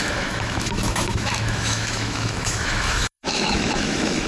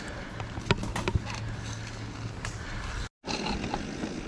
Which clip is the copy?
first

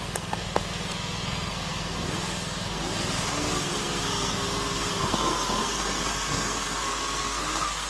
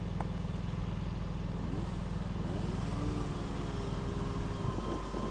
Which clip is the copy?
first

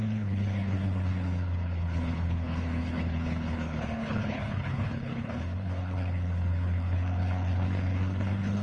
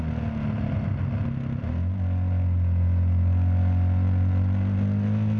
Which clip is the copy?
first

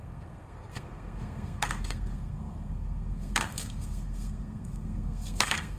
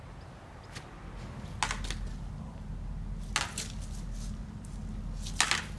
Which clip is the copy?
first